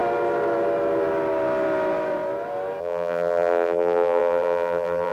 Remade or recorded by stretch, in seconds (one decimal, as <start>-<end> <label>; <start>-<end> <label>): 0.0-2.8 recorded; 2.8-5.1 remade